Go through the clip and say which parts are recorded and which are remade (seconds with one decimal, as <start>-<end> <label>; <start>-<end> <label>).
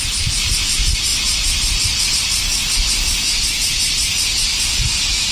0.0-1.1 remade; 1.1-2.1 recorded; 2.1-2.5 remade; 2.5-3.9 recorded; 3.9-5.3 remade